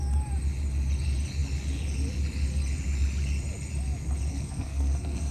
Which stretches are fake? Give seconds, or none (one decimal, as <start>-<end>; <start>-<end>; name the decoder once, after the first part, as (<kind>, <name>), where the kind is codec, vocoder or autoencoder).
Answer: 4.3-5.3 (codec, SNAC)